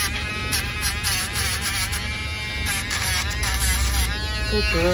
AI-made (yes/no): no